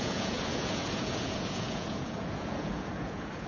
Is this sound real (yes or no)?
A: no